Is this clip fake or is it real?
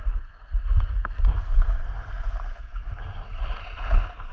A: real